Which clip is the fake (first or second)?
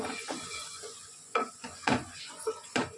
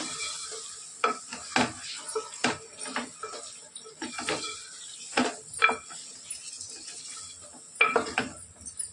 first